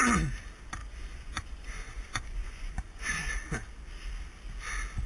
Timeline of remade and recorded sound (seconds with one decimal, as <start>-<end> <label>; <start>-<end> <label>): 0.0-0.8 recorded; 0.8-3.3 remade; 3.3-5.1 recorded